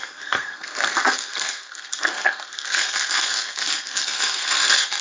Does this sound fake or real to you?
fake